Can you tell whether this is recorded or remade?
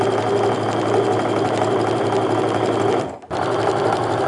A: recorded